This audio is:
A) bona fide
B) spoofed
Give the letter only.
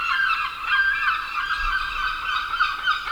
A